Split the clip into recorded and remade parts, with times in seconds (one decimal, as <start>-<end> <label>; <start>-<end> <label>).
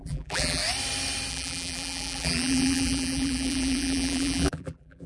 0.0-0.6 remade; 0.6-1.3 recorded; 1.3-5.1 remade